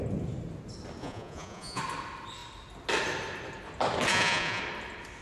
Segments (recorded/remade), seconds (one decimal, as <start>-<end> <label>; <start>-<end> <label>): 0.0-1.0 recorded; 1.0-1.8 remade; 1.8-4.1 recorded; 4.1-4.6 remade; 4.6-5.2 recorded